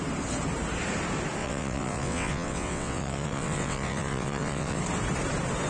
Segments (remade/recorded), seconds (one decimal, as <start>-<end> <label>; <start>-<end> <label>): 0.0-1.4 recorded; 1.4-4.8 remade; 4.8-5.7 recorded